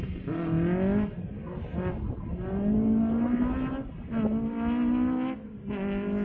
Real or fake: real